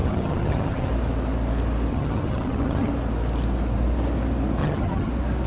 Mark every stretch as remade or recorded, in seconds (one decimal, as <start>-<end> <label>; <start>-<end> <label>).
0.0-0.9 remade; 0.9-1.9 recorded; 1.9-2.9 remade; 2.9-4.6 recorded; 4.6-5.1 remade; 5.1-5.5 recorded